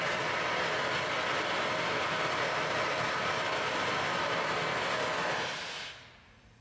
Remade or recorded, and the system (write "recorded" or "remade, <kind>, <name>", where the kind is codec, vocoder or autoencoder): recorded